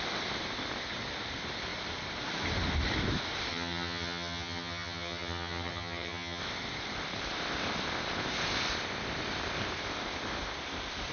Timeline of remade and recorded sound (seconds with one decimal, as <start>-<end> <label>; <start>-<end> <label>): 0.0-3.5 recorded; 3.5-6.4 remade; 6.4-11.1 recorded